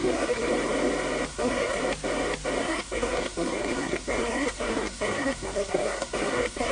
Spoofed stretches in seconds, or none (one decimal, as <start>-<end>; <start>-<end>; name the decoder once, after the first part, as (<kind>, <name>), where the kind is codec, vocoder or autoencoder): 0.0-0.5 (codec, SNAC); 1.3-1.8; 2.6-6.7